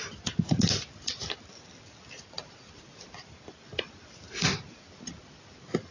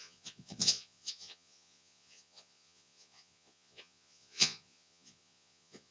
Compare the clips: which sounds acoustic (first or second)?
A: first